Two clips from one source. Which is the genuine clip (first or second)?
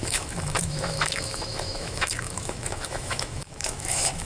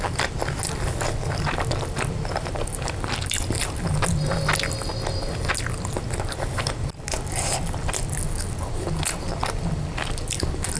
second